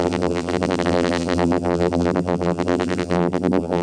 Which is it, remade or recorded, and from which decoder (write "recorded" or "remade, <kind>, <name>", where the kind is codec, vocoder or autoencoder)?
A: remade, vocoder, BigVGAN v2